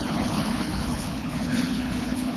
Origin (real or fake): fake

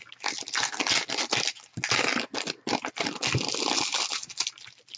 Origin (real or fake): real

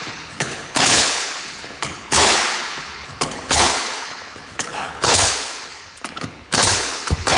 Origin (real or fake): fake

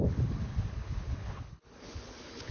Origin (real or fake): fake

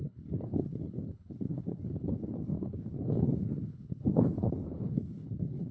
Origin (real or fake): fake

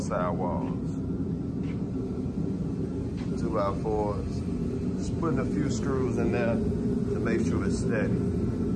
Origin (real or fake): real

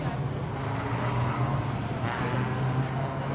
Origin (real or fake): real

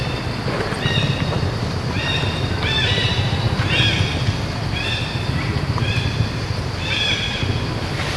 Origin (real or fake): real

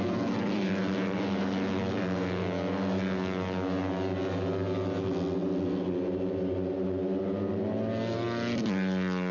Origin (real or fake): real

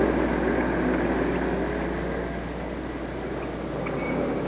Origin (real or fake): real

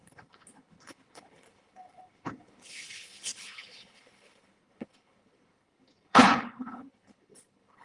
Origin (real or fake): fake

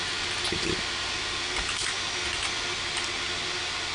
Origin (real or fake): real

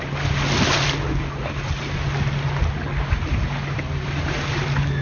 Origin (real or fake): real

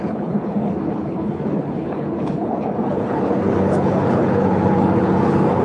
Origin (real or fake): fake